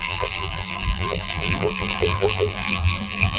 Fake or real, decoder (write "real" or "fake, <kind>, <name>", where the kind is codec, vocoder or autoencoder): fake, vocoder, BigVGAN v2